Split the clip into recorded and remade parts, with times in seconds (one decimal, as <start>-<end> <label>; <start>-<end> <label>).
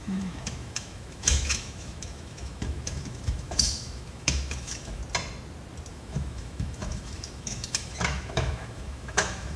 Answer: 0.0-5.0 remade; 5.0-5.9 recorded; 5.9-9.6 remade